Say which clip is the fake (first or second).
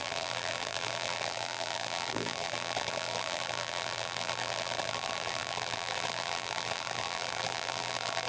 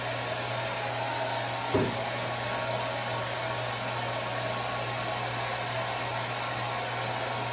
first